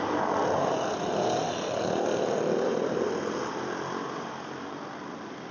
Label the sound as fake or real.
real